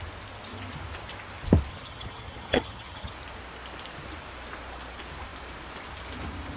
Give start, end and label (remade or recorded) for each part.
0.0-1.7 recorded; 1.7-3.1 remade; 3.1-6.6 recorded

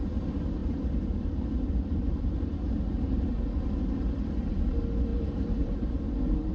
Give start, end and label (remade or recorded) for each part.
0.0-5.1 recorded; 5.1-6.0 remade; 6.0-6.5 recorded

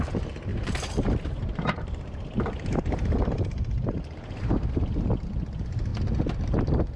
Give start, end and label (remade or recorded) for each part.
0.0-0.5 recorded; 0.5-4.7 remade; 4.7-7.0 recorded